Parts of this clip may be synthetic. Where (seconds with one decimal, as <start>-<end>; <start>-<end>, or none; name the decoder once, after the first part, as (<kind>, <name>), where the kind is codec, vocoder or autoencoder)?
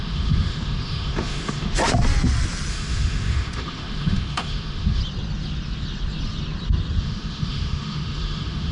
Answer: 0.0-1.8 (autoencoder, DAC-VAE); 2.7-5.0; 7.0-8.7